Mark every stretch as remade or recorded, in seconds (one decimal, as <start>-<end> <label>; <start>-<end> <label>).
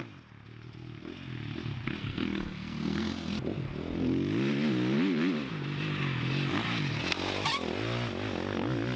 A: 0.0-2.0 recorded; 2.0-3.3 remade; 3.3-9.0 recorded